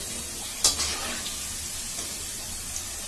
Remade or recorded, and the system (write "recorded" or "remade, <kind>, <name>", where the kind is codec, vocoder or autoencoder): recorded